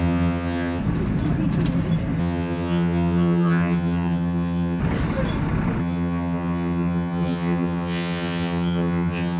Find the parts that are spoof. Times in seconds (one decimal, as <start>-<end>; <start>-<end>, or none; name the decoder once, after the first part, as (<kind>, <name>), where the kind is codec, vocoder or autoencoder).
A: 0.0-0.8 (vocoder, HiFi-GAN); 2.2-4.8; 5.8-9.4